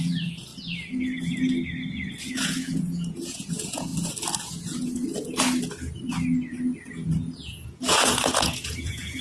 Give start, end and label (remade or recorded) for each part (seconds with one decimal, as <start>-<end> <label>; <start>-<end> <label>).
0.0-0.5 remade; 0.5-2.3 recorded; 2.3-3.9 remade; 3.9-4.5 recorded; 4.5-5.0 remade; 5.0-6.9 recorded; 6.9-9.2 remade